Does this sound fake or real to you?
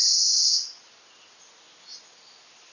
real